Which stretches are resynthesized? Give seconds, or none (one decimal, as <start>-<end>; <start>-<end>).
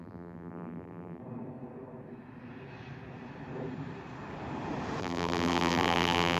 0.0-1.2; 5.0-6.4